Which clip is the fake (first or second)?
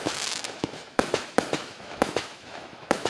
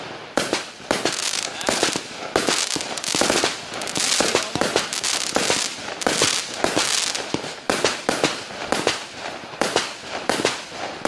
first